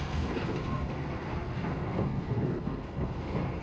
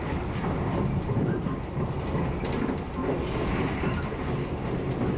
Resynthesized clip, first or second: first